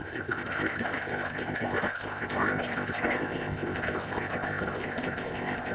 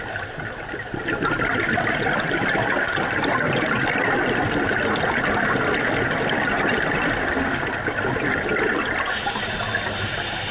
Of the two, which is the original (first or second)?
second